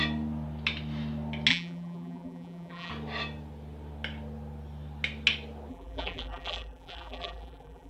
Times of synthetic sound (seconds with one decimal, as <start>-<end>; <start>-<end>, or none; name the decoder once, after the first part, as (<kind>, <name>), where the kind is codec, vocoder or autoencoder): 1.5-2.9 (vocoder, BigVGAN v2); 5.7-7.9